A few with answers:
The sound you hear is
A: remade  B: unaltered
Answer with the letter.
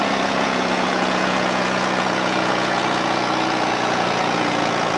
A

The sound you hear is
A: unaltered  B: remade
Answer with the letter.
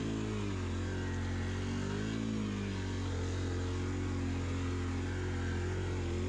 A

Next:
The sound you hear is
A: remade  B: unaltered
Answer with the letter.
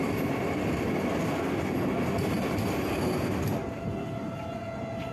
B